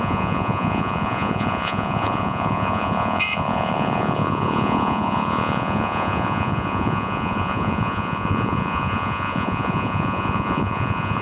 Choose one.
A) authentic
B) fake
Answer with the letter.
B